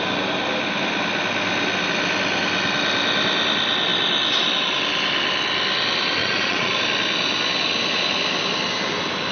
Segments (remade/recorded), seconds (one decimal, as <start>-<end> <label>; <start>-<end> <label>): 0.0-6.2 recorded; 6.2-6.8 remade; 6.8-9.3 recorded